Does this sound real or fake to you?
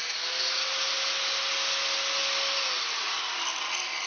real